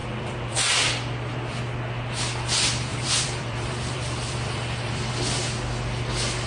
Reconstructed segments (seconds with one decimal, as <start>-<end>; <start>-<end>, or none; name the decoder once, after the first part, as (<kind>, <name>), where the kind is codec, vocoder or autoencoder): 0.0-1.6 (vocoder, BigVGAN v2); 2.9-5.1